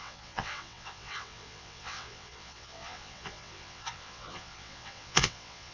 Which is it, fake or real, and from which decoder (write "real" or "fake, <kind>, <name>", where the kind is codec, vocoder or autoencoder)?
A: fake, vocoder, WaveNeXt